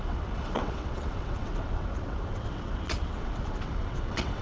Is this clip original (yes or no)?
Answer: no